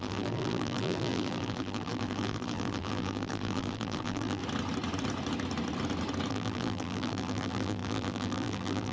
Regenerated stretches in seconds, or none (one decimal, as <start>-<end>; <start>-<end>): 0.0-4.4; 6.3-8.9